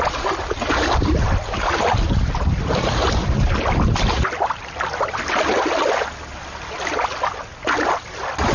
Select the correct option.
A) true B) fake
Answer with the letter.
A